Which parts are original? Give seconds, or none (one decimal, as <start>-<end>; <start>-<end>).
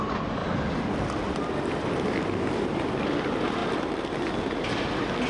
0.0-5.3